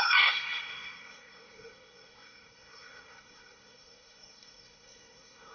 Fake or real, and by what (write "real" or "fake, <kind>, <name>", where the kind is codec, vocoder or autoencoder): fake, codec, SNAC